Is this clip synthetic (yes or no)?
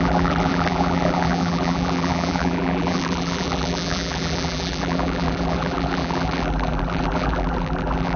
yes